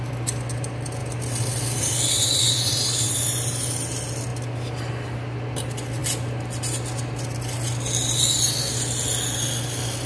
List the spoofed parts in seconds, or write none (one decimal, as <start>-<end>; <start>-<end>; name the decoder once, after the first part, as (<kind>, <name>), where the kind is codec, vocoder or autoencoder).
none